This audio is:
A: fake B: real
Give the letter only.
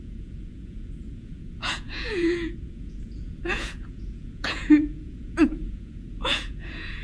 A